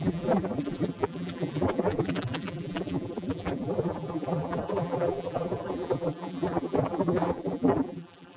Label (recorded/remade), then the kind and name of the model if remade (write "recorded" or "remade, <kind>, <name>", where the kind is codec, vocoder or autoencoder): remade, vocoder, BigVGAN v2